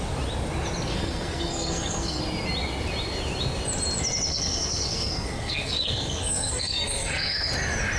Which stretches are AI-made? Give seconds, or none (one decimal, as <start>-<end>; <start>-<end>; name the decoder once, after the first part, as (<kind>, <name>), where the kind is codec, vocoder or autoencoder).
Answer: 0.9-2.2 (codec, SNAC); 4.3-7.5